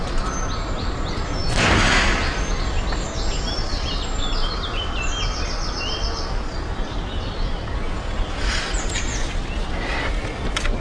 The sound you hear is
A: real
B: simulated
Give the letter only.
A